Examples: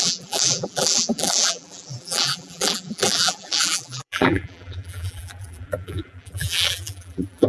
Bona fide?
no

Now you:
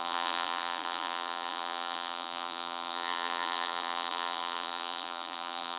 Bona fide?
no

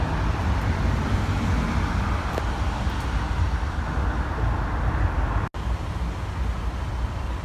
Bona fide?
yes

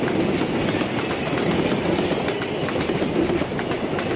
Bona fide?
yes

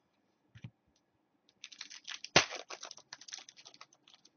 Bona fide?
yes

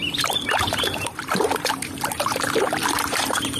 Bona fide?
no